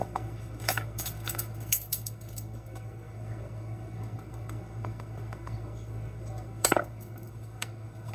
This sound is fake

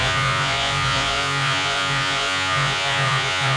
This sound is fake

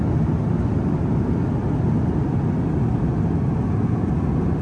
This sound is real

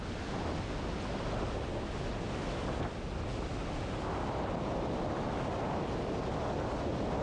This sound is real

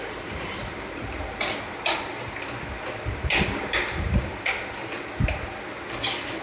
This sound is real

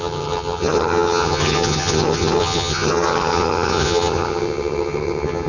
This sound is fake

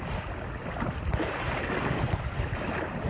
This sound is real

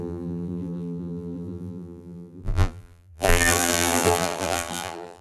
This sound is fake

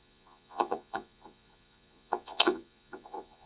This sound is fake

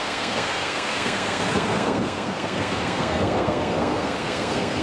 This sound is fake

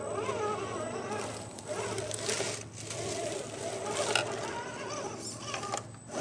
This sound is real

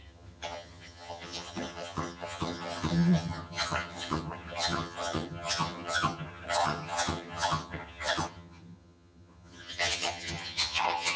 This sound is fake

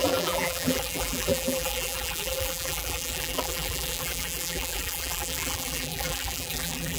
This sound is fake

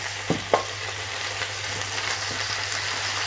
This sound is real